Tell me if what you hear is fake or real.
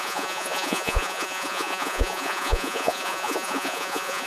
fake